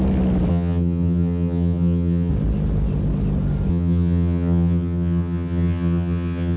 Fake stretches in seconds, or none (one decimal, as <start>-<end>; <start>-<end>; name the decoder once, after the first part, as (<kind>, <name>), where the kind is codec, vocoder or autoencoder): 0.5-2.3 (vocoder, HiFi-GAN); 3.7-6.6